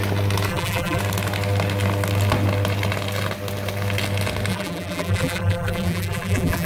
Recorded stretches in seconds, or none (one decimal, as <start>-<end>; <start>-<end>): 0.0-0.5; 1.0-4.5